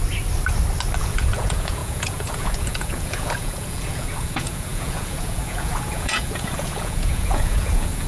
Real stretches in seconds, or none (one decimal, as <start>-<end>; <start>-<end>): 0.0-1.0